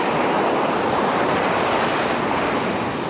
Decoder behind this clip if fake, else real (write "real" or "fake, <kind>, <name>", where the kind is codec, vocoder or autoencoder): fake, vocoder, BigVGAN v2